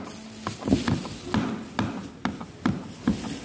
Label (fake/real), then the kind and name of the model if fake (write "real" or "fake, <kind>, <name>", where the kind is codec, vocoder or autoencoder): real